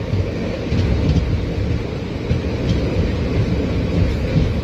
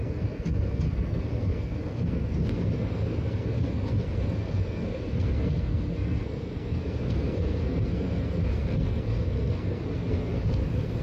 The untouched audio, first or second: first